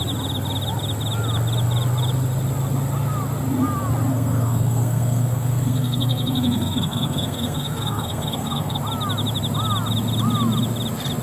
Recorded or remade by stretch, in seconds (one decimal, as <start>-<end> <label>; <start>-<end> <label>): 0.0-4.1 recorded; 4.1-8.8 remade; 8.8-11.2 recorded